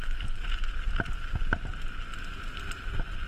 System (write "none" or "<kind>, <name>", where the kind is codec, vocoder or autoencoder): none